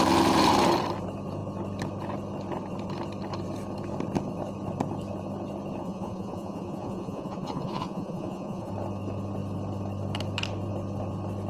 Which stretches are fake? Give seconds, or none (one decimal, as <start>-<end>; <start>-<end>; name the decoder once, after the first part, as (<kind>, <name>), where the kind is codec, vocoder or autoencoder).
5.8-8.7 (vocoder, Vocos)